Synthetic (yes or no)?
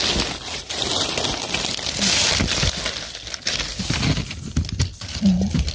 no